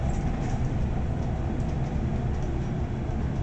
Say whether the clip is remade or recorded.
recorded